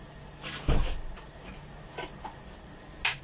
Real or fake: real